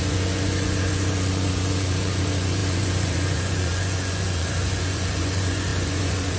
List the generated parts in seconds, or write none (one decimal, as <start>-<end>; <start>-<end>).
0.0-6.4